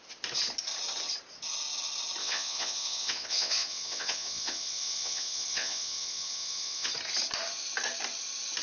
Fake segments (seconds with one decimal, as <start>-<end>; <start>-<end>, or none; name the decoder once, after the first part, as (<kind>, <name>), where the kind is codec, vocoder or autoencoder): 2.2-6.9 (vocoder, WaveNeXt)